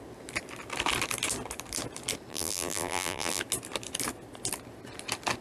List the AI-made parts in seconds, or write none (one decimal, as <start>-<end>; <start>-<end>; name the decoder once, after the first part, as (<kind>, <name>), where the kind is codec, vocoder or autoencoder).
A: 2.3-3.4 (vocoder, BigVGAN v2)